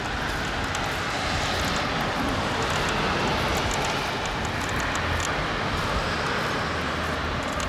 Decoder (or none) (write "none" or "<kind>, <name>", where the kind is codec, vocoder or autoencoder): none